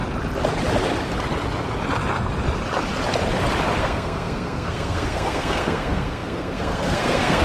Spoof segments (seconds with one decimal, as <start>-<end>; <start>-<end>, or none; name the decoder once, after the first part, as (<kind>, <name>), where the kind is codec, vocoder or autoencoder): 3.8-7.4 (codec, SNAC)